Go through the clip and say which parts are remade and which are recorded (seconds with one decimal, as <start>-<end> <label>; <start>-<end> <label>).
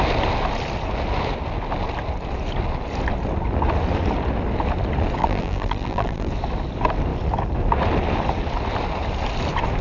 0.0-5.2 recorded; 5.2-6.3 remade; 6.3-9.8 recorded